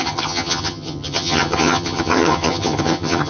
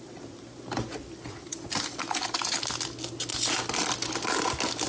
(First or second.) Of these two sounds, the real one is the second